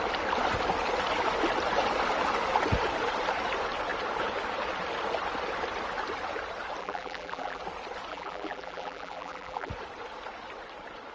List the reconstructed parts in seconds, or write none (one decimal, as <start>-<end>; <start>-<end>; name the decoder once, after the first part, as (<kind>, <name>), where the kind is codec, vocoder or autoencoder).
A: 6.8-7.6 (vocoder, BigVGAN v2); 8.1-9.7